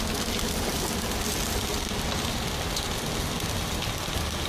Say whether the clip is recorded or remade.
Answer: recorded